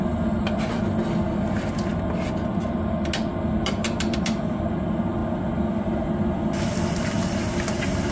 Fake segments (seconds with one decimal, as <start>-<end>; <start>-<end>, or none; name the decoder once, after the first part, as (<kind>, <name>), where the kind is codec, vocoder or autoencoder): none